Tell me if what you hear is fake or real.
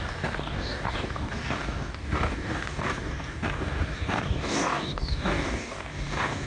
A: fake